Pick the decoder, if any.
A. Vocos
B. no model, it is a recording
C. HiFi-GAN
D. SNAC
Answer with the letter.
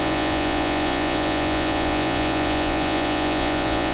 A